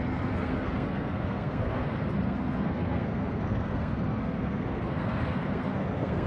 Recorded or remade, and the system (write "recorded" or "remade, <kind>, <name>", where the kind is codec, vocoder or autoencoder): remade, codec, SNAC